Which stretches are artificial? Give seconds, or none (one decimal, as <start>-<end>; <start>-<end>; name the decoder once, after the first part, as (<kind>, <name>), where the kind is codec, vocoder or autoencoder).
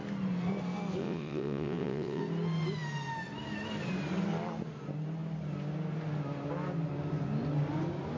1.0-2.2 (vocoder, WaveNeXt)